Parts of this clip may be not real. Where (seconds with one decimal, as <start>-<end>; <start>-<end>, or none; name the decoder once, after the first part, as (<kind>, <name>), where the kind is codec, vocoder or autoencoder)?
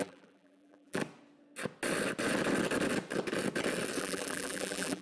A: 0.0-1.0 (vocoder, BigVGAN v2); 4.0-5.0